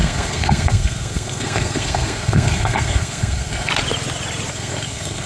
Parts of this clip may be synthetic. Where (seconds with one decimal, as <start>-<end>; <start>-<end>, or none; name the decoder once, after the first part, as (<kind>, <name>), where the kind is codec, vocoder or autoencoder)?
0.0-3.7 (codec, SNAC); 4.5-5.3